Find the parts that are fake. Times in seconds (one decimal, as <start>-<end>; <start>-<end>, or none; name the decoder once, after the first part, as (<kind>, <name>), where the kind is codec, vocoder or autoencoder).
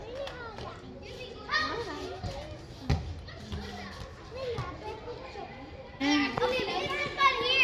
none